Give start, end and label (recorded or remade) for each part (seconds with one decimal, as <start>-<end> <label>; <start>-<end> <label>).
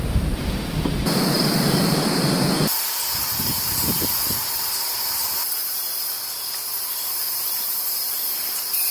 0.0-2.0 remade; 2.0-3.1 recorded; 3.1-8.9 remade